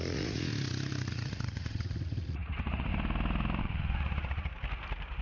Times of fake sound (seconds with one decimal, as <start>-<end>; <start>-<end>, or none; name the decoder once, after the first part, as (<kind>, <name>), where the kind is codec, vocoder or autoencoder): 0.0-0.5 (vocoder, Vocos); 1.1-2.9; 3.6-4.5